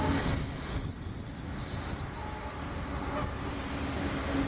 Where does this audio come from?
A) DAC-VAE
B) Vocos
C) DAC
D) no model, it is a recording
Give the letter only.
D